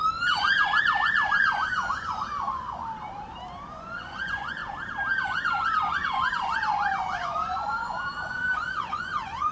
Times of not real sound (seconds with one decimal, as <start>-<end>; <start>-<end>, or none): 0.0-2.8; 3.7-4.6; 5.2-9.5